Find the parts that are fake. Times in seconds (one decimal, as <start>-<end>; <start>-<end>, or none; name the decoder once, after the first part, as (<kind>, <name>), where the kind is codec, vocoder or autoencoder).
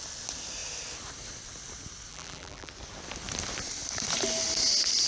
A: 2.1-2.7 (vocoder, BigVGAN v2)